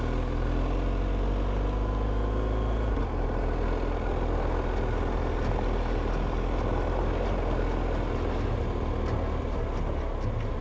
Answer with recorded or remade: recorded